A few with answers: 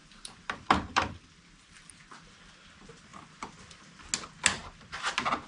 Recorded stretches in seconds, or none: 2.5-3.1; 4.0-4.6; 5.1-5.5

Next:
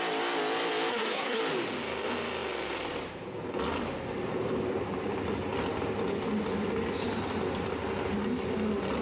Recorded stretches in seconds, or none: 0.0-0.9; 1.4-9.0